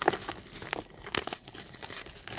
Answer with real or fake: real